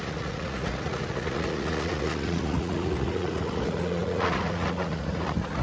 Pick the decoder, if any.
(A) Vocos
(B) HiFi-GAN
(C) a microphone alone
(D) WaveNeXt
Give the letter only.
A